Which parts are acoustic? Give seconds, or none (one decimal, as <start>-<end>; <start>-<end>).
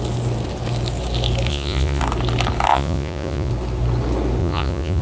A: 0.0-1.5; 2.0-2.7; 3.5-4.4